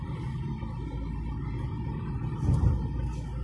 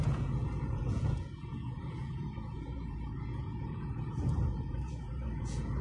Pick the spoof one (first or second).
second